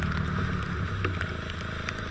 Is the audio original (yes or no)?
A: yes